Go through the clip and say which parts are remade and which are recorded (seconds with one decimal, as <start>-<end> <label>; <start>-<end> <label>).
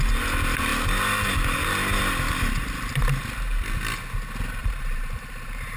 0.0-4.6 recorded; 4.6-5.8 remade